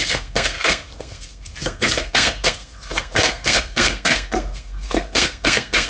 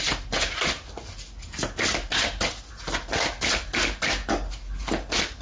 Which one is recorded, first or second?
second